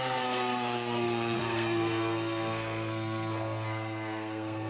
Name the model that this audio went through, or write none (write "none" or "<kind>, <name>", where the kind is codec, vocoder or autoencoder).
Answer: codec, SNAC